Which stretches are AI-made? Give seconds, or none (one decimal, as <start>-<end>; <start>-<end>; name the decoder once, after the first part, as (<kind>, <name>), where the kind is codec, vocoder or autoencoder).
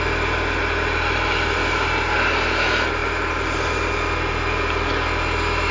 none